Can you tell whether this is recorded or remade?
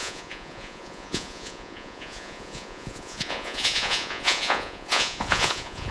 remade